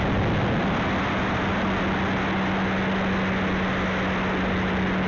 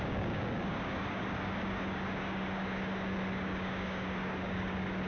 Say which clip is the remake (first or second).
second